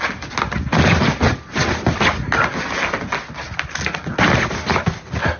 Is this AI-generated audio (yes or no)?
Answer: no